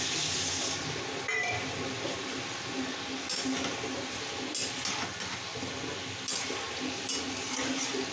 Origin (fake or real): real